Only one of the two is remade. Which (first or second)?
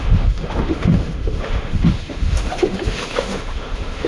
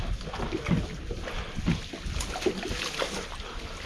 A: first